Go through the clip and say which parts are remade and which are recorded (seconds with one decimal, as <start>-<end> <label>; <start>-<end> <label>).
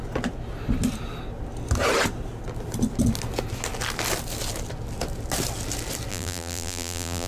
0.0-6.1 recorded; 6.1-7.3 remade